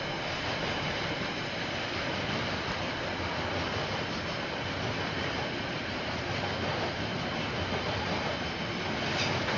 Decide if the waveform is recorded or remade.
recorded